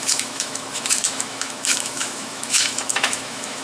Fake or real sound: fake